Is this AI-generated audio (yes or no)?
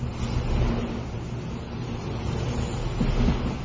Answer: no